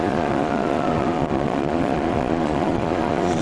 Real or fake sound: fake